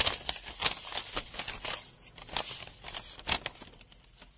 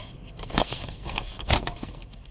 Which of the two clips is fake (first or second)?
second